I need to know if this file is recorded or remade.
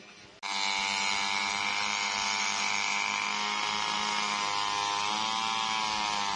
recorded